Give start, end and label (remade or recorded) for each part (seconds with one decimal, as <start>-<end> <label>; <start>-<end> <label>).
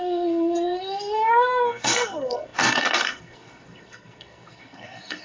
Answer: 0.0-5.2 remade